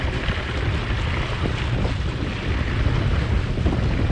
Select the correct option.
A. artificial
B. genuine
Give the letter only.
B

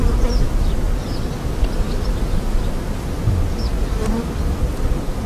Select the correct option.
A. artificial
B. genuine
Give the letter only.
B